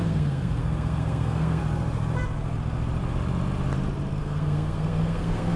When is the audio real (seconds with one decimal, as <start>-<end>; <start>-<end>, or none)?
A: 1.6-4.2